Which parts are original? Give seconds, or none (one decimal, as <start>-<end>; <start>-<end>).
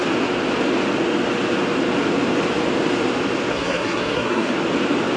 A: 0.0-3.5; 4.5-5.2